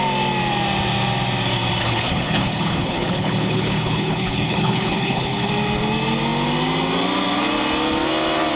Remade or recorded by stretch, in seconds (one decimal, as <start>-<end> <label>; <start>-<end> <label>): 0.0-1.8 recorded; 1.8-5.5 remade; 5.5-8.6 recorded